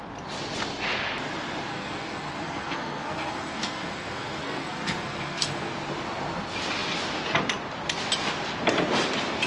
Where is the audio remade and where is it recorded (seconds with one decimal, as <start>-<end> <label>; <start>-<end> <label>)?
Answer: 0.0-1.7 recorded; 1.7-5.7 remade; 5.7-9.5 recorded